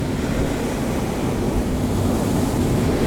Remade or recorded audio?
recorded